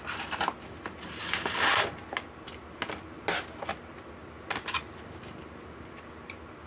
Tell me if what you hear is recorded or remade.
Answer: recorded